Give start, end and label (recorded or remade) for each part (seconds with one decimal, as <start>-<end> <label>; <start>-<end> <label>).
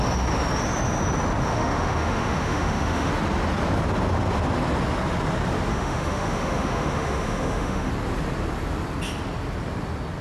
0.0-1.5 recorded; 1.5-3.1 remade; 3.1-5.7 recorded; 5.7-7.9 remade; 7.9-10.2 recorded